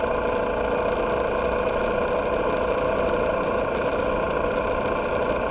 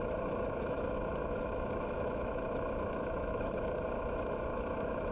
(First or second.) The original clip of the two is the first